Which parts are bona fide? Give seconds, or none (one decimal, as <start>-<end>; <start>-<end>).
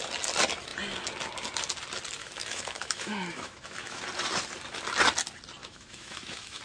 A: 0.0-2.2; 4.0-5.6